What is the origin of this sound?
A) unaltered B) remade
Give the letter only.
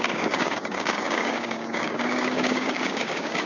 B